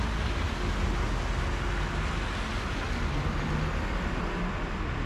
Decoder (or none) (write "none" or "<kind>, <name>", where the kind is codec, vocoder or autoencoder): none